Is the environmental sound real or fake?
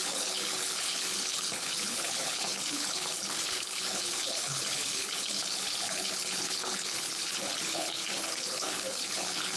fake